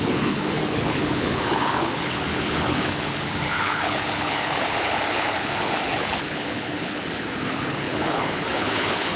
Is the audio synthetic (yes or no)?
yes